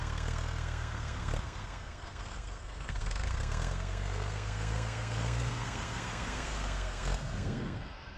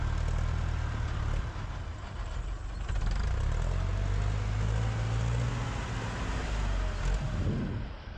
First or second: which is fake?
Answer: first